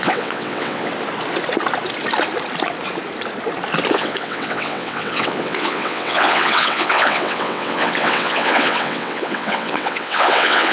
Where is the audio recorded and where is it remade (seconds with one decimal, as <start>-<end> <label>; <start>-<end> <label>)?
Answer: 0.0-0.9 remade; 0.9-3.9 recorded; 3.9-10.7 remade